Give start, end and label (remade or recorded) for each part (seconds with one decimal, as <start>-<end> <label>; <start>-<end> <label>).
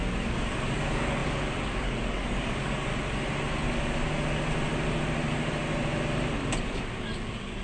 0.0-2.9 remade; 2.9-6.6 recorded; 6.6-7.6 remade